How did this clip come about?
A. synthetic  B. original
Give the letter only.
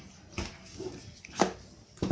B